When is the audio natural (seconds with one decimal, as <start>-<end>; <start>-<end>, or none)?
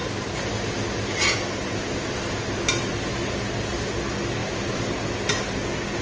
0.0-6.0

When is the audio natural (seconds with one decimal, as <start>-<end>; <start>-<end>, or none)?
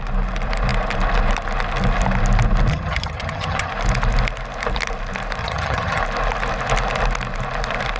0.0-2.7; 3.7-5.4; 6.0-8.0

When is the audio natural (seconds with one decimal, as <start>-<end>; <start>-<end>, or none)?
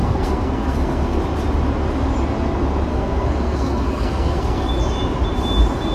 1.2-2.9; 4.7-5.9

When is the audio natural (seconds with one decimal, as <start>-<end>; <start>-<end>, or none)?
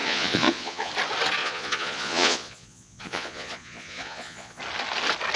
0.9-1.4; 4.6-5.4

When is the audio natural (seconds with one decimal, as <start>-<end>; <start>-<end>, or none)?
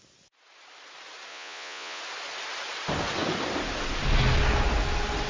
0.0-1.3; 2.0-5.3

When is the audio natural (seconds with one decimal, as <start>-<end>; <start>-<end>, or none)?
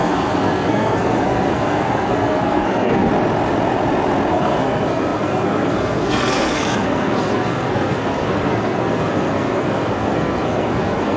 3.1-4.3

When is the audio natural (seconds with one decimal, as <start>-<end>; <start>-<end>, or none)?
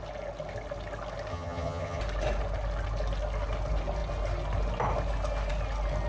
0.0-1.3; 2.0-6.1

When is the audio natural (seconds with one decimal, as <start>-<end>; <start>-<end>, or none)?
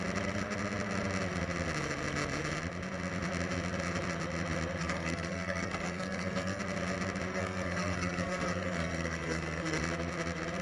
0.0-4.8; 6.6-7.3; 9.8-10.6